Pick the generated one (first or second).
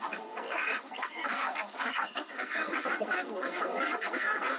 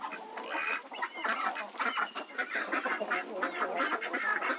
first